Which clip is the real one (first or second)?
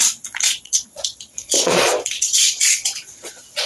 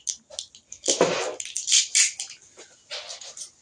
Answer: second